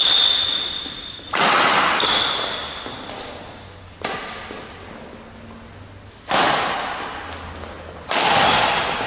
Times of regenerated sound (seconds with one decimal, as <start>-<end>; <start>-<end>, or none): none